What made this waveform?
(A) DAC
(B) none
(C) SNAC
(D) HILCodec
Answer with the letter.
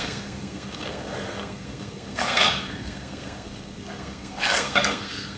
C